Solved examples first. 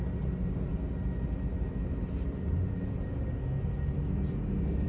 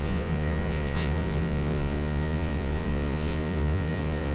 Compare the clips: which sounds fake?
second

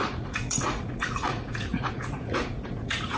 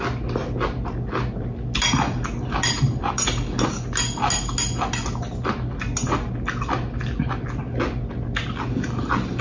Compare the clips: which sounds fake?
first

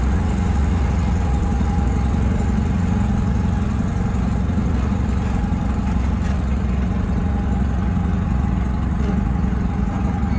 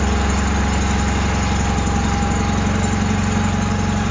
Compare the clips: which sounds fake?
first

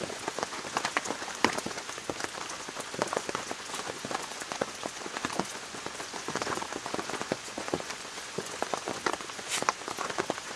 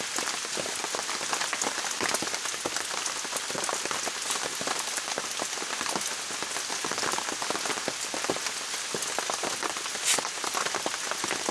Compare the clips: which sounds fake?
first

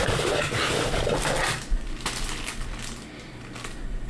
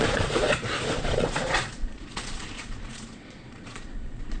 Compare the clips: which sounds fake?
second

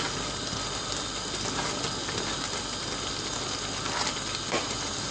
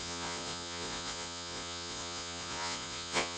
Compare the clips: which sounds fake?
second